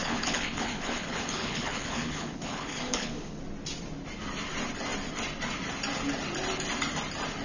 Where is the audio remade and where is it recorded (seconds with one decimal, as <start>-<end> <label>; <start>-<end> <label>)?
0.0-3.4 remade; 3.4-7.4 recorded